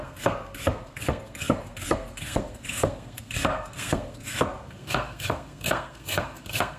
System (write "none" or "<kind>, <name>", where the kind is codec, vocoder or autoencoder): codec, SNAC